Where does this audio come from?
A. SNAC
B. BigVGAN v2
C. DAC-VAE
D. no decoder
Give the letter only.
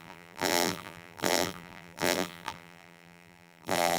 B